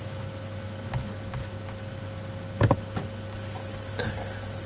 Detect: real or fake real